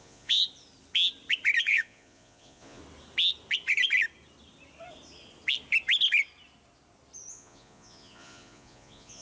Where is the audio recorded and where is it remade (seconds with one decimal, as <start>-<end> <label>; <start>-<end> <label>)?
0.0-0.4 remade; 0.4-1.6 recorded; 1.6-2.8 remade; 2.8-7.3 recorded; 7.3-9.2 remade